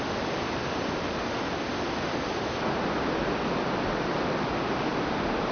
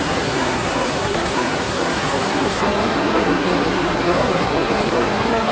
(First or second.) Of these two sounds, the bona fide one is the first